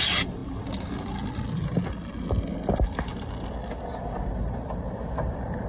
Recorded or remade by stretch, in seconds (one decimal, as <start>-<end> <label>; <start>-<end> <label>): 0.0-5.7 recorded